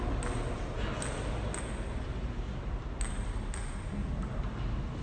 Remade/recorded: recorded